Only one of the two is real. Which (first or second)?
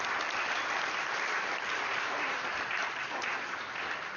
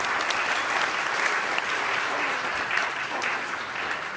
second